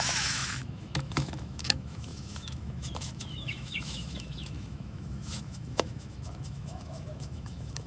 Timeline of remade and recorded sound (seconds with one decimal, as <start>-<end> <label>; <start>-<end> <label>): 0.0-7.9 remade